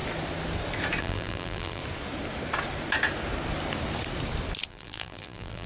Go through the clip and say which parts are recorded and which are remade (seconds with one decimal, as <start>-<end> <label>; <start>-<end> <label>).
0.0-1.0 recorded; 1.0-1.8 remade; 1.8-4.7 recorded; 4.7-5.7 remade